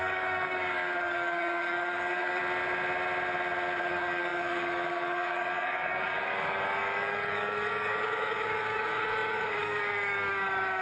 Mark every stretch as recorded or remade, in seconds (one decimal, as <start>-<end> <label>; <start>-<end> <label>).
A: 0.0-2.4 remade; 2.4-3.8 recorded; 3.8-10.8 remade